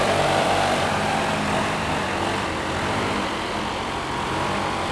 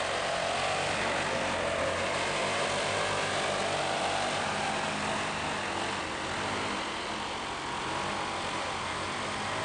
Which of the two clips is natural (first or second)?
second